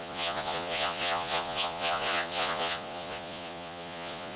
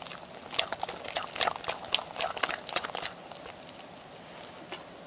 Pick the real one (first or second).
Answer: second